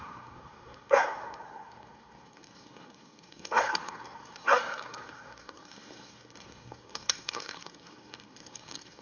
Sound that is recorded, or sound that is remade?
remade